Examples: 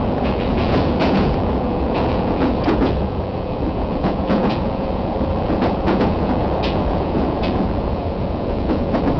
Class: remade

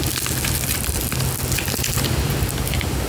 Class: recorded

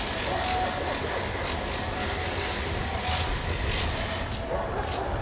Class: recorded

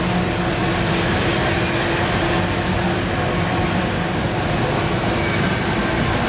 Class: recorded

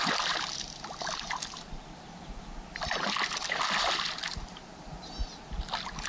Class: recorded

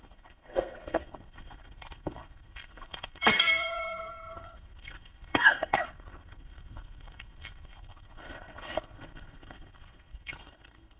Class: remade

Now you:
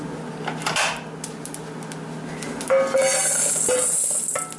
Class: recorded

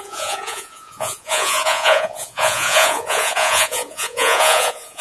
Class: remade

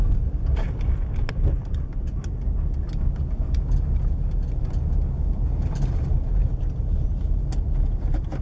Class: recorded